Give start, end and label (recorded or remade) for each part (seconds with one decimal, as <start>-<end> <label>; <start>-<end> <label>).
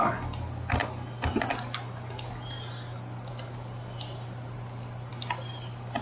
0.0-6.0 recorded